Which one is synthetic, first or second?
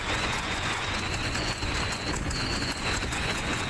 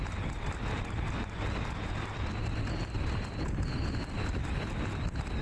first